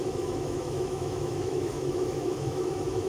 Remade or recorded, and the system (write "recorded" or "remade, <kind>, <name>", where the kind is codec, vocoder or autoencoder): remade, autoencoder, DAC-VAE